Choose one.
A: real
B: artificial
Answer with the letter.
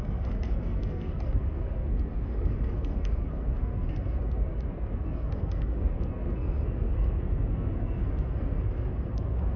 B